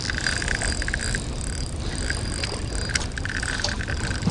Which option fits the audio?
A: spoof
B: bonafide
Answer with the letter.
B